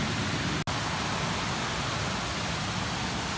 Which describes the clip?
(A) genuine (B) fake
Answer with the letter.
A